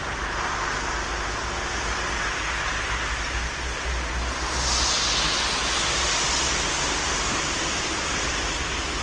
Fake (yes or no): no